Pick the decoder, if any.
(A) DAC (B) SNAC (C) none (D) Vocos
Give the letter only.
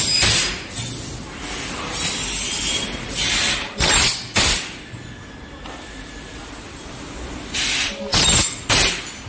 C